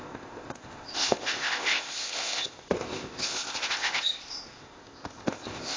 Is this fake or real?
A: fake